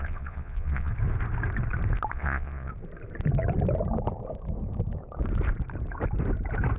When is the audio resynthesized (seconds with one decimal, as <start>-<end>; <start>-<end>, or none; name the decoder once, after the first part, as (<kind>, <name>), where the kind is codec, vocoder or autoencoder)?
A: 0.0-0.9 (vocoder, Vocos); 2.1-2.7